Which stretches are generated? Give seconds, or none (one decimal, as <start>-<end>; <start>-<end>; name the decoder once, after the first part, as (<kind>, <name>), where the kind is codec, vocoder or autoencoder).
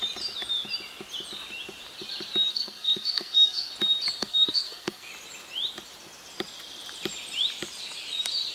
2.5-3.7 (codec, SNAC); 4.2-5.1